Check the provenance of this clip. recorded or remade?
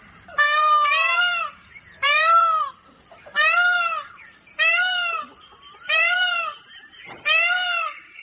remade